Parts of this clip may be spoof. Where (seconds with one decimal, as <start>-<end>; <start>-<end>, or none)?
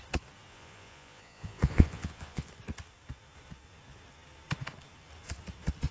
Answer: 0.5-2.5